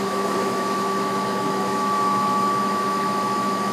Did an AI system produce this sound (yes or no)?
yes